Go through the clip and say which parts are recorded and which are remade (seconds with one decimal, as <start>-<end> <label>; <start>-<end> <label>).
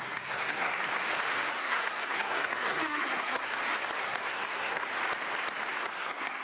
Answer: 0.0-0.7 remade; 0.7-1.5 recorded; 1.5-3.5 remade; 3.5-4.0 recorded; 4.0-4.9 remade; 4.9-5.7 recorded; 5.7-6.4 remade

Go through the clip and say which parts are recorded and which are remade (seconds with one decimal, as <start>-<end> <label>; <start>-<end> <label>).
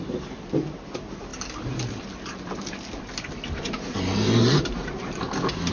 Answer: 0.0-5.7 recorded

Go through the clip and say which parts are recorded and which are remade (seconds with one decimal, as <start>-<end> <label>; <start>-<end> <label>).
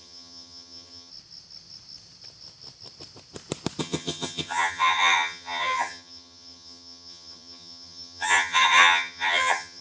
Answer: 0.0-1.1 remade; 1.1-3.8 recorded; 3.8-9.8 remade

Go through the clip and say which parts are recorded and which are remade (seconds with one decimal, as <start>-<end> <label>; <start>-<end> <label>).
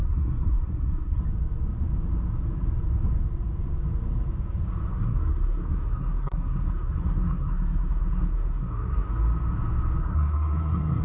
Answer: 0.0-1.2 remade; 1.2-4.9 recorded; 4.9-9.1 remade; 9.1-10.0 recorded; 10.0-11.0 remade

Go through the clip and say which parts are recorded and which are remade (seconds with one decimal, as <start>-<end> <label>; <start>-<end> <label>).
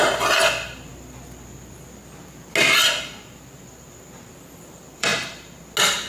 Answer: 0.0-0.9 remade; 0.9-4.6 recorded; 4.6-5.1 remade; 5.1-6.1 recorded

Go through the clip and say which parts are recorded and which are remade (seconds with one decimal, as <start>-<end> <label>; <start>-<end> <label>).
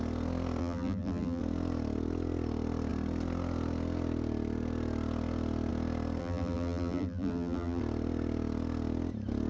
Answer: 0.0-0.6 recorded; 0.6-1.4 remade; 1.4-6.2 recorded; 6.2-7.8 remade; 7.8-9.5 recorded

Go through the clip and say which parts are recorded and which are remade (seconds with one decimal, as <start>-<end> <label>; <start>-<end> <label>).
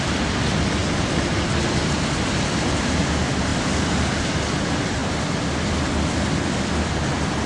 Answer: 0.0-7.5 recorded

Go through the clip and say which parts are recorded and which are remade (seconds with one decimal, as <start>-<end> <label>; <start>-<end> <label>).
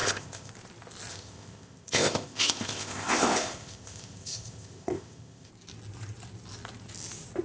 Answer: 0.0-0.5 remade; 0.5-1.1 recorded; 1.1-5.5 remade; 5.5-7.4 recorded